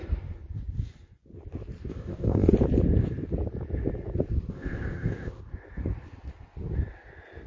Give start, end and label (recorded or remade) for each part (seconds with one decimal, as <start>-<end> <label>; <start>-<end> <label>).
0.0-1.9 recorded; 1.9-2.5 remade; 2.5-4.5 recorded; 4.5-5.4 remade; 5.4-7.5 recorded